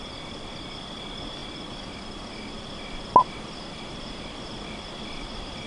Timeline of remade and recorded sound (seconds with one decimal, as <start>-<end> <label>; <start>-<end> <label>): 0.0-5.7 recorded